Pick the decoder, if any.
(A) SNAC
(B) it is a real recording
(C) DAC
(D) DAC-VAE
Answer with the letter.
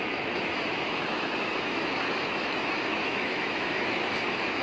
D